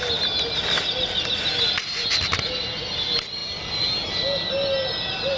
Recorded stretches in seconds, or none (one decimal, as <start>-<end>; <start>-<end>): 0.0-5.4